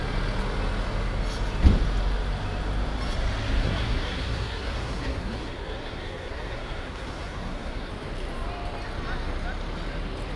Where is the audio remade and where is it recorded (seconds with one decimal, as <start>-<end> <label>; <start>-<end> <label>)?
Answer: 0.0-3.6 recorded; 3.6-7.9 remade; 7.9-10.4 recorded